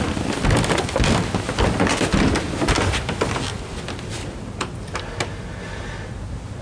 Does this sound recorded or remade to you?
recorded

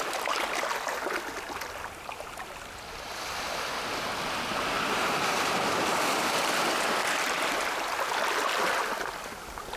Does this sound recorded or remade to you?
recorded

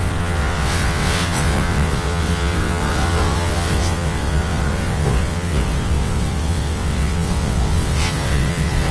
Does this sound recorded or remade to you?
remade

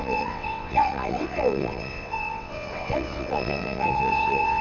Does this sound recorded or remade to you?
remade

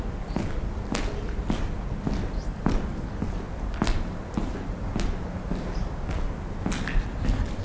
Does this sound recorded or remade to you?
recorded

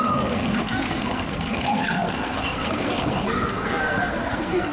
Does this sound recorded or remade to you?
remade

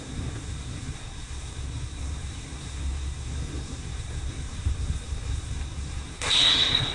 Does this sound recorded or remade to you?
remade